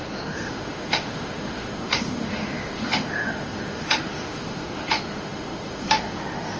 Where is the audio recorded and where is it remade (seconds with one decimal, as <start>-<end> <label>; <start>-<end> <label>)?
0.0-6.6 remade